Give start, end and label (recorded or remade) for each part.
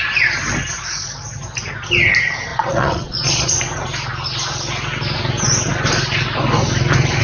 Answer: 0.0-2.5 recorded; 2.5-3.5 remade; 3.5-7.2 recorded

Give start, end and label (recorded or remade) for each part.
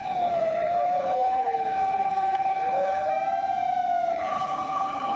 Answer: 0.0-3.1 remade; 3.1-4.1 recorded; 4.1-5.2 remade